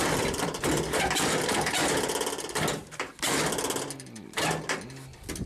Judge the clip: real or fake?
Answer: real